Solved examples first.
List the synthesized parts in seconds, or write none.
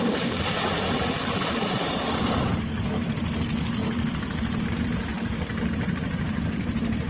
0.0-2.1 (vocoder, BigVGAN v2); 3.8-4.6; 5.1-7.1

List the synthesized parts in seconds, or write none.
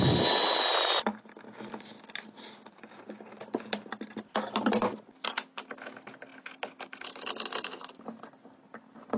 none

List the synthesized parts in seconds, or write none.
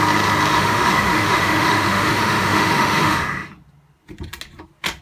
0.5-3.5 (autoencoder, DAC-VAE)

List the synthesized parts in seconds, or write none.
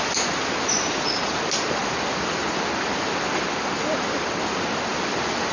none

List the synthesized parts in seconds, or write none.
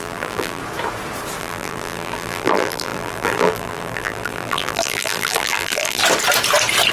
0.0-0.6 (vocoder, BigVGAN v2); 1.4-6.0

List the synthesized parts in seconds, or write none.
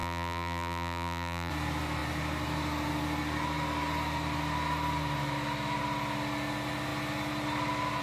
0.0-1.5 (vocoder, BigVGAN v2)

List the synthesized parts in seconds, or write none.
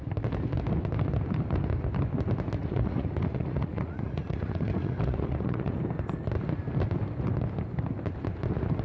2.6-5.8 (vocoder, Vocos)